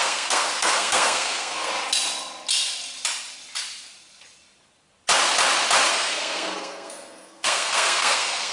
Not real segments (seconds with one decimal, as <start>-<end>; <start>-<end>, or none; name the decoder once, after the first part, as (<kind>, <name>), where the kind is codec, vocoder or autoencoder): 0.0-1.7 (codec, SNAC); 5.9-8.5